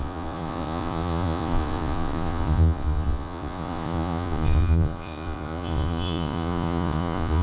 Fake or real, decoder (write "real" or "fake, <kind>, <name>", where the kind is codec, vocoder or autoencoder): fake, vocoder, Vocos